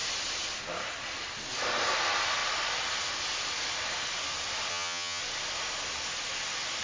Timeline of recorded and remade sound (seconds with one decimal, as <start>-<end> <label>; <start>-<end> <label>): 0.0-4.7 recorded; 4.7-5.2 remade; 5.2-6.8 recorded